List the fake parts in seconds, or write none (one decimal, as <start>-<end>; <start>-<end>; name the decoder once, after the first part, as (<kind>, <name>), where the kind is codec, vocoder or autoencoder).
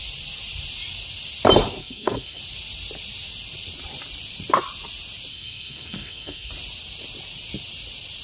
1.8-2.4 (codec, SNAC); 5.3-6.5